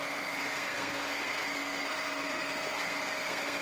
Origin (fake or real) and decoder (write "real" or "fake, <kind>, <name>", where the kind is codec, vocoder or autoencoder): fake, codec, SNAC